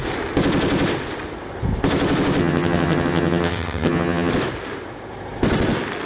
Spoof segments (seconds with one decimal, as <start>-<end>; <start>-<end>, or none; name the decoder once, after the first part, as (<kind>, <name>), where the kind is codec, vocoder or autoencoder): 2.4-4.3 (vocoder, HiFi-GAN)